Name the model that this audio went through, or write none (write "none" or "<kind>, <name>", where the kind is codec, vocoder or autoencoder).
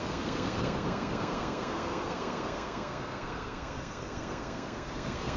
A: codec, SNAC